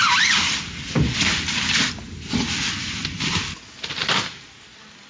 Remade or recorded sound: recorded